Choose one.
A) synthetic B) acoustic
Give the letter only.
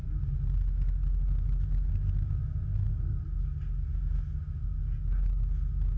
B